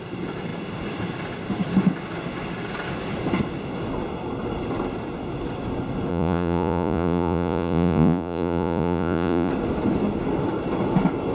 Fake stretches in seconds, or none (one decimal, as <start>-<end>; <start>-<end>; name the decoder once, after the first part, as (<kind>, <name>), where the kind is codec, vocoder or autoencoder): 6.1-9.5 (vocoder, Vocos)

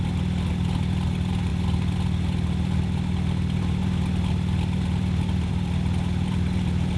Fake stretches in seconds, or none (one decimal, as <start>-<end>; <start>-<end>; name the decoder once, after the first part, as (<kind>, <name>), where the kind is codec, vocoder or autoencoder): none

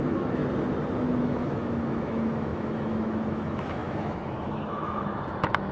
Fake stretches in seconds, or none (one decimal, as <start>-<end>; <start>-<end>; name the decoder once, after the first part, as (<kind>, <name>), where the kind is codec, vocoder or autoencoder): 0.0-0.4 (autoencoder, DAC-VAE); 1.2-5.7

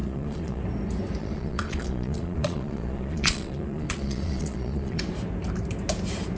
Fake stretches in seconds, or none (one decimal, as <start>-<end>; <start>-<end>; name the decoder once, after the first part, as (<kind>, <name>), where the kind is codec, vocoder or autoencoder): 0.0-0.6 (vocoder, Vocos); 1.2-5.0

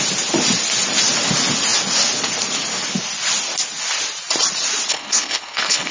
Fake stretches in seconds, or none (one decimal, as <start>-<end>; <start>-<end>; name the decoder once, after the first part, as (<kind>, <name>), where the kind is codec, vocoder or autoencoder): 4.9-5.9 (codec, HILCodec)